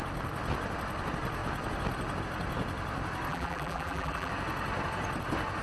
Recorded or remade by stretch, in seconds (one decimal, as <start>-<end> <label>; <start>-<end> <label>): 0.0-3.3 recorded; 3.3-4.3 remade; 4.3-5.6 recorded